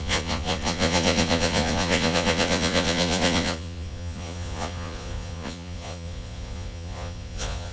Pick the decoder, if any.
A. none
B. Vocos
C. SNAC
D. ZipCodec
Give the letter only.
B